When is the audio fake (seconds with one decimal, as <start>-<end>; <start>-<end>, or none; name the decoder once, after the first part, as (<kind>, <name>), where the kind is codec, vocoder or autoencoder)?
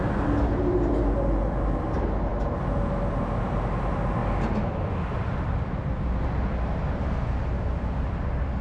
none